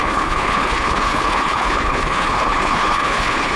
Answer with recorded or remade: remade